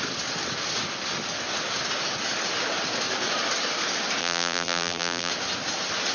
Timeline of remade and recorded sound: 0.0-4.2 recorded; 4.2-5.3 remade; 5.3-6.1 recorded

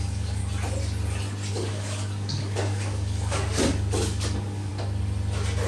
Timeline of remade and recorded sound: 0.0-0.4 remade; 0.4-1.5 recorded; 1.5-4.7 remade; 4.7-5.7 recorded

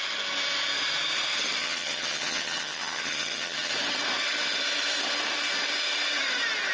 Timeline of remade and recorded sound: 0.0-1.6 recorded; 1.6-3.7 remade; 3.7-6.7 recorded